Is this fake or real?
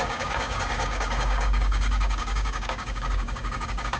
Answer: fake